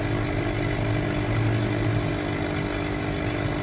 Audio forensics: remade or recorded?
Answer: recorded